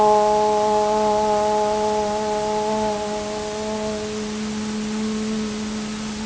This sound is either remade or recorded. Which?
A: recorded